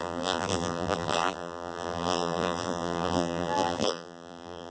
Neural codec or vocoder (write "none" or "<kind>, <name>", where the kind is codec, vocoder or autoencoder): vocoder, BigVGAN v2